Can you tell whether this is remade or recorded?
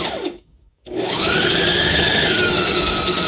remade